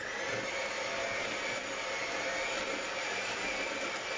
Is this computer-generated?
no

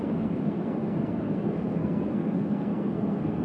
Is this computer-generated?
yes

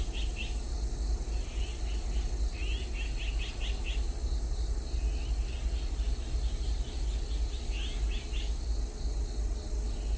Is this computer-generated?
no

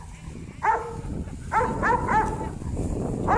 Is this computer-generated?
no